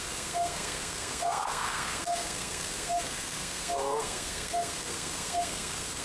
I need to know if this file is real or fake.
fake